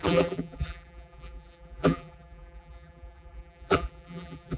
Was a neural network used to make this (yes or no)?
yes